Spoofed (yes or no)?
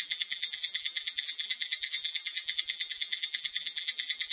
yes